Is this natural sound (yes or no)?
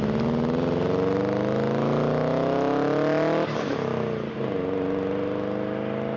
yes